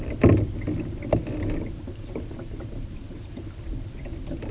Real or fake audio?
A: real